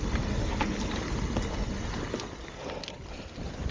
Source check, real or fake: real